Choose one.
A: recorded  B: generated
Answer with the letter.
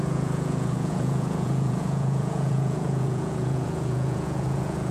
B